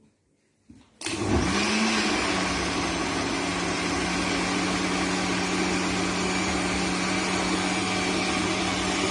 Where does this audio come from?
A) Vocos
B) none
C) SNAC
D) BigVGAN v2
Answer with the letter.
B